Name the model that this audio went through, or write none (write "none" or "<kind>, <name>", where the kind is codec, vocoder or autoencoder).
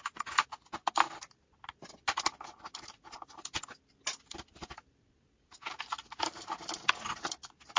none